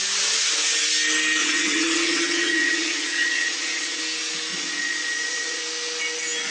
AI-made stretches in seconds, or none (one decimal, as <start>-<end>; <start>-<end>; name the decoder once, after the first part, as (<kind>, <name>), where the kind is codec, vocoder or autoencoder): 1.4-4.0 (vocoder, Vocos); 4.5-5.6

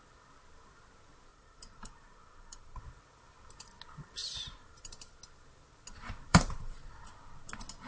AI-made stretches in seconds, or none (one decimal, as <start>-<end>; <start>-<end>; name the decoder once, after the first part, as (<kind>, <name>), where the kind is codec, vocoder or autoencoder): 1.3-2.8 (vocoder, BigVGAN v2); 4.2-5.1; 6.3-6.9

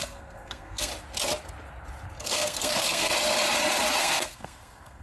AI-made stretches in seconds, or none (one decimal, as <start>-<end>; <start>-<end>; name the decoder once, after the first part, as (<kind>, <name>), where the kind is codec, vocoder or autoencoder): 0.0-0.9 (codec, SNAC); 2.2-3.1; 4.0-5.0

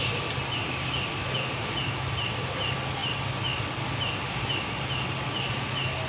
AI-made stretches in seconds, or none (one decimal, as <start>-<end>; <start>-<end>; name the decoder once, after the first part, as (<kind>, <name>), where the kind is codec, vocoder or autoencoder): 3.0-3.8 (vocoder, BigVGAN v2)